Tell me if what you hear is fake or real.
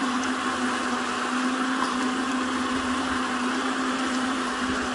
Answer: real